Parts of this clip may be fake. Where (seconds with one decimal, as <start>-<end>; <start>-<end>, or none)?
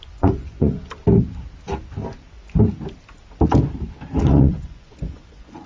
0.0-0.8; 4.2-5.7